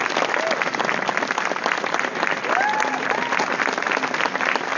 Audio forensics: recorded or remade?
recorded